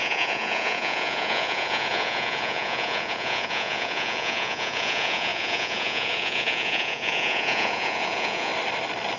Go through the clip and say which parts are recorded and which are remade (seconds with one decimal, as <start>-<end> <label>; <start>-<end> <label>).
0.0-8.5 remade; 8.5-9.2 recorded